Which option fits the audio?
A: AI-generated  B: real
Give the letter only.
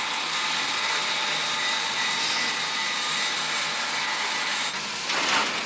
B